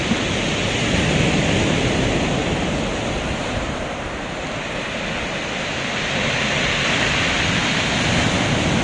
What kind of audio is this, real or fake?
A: real